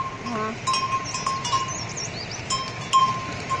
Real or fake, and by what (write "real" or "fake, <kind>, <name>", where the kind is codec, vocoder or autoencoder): real